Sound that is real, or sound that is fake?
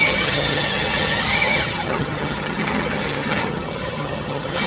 fake